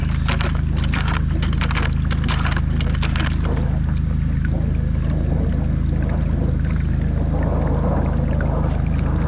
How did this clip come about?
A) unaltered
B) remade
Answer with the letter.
A